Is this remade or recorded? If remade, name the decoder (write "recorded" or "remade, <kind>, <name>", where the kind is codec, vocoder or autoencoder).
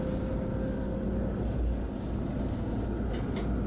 recorded